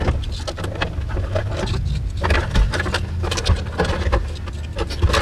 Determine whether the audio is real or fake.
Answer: real